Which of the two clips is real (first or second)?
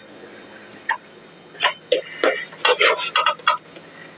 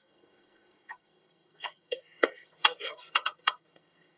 first